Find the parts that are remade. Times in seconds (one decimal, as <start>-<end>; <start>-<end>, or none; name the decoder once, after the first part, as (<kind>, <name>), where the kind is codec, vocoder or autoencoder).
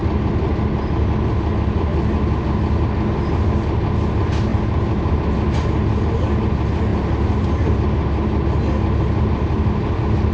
4.5-5.2 (vocoder, BigVGAN v2)